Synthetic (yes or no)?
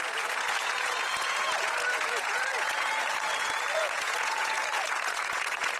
yes